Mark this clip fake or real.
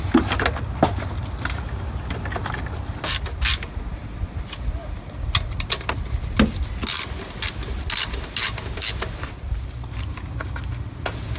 real